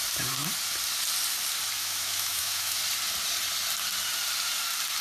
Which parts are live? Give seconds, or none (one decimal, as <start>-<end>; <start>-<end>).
0.0-1.8; 2.8-5.0